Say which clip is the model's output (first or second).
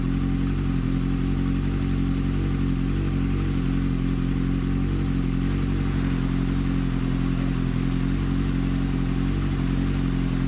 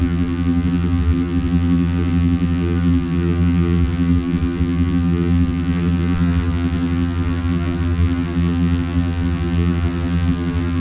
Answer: second